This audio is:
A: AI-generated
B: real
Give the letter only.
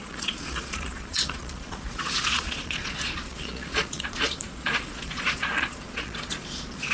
A